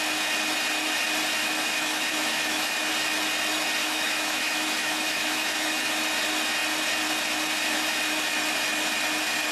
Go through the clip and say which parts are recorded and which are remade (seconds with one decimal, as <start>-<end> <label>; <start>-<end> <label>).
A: 0.0-1.4 recorded; 1.4-2.9 remade; 2.9-3.8 recorded; 3.8-5.9 remade; 5.9-9.5 recorded